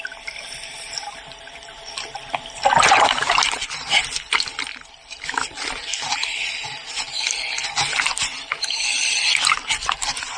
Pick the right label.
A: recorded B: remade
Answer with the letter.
B